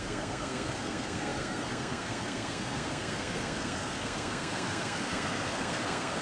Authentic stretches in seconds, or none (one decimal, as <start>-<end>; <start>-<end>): none